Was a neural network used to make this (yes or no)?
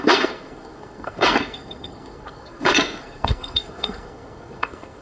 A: yes